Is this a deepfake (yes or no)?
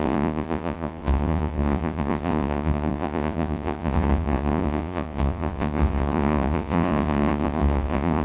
yes